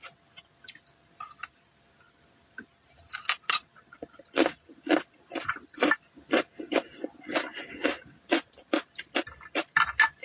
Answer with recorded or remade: recorded